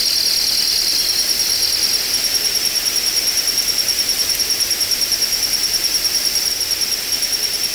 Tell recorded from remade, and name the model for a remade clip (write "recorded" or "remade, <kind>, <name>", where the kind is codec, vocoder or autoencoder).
recorded